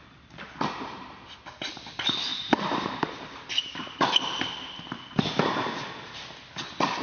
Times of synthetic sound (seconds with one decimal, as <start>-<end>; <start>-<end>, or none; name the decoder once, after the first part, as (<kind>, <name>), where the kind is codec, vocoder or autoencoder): 2.3-4.1 (vocoder, BigVGAN v2)